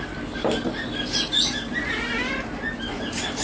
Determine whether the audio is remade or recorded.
recorded